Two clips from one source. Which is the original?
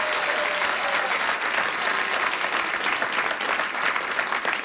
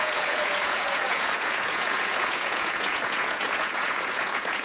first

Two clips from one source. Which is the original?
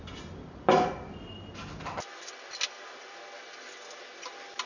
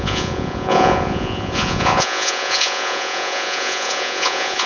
first